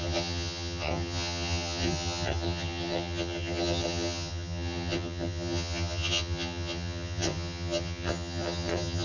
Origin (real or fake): fake